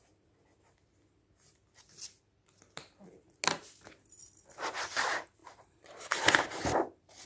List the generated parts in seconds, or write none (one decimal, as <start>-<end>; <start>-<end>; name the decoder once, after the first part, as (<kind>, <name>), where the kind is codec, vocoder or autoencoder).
5.4-6.3 (vocoder, BigVGAN v2)